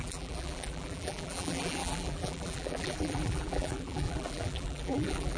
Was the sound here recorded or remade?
remade